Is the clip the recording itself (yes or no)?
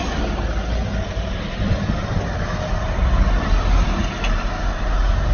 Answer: yes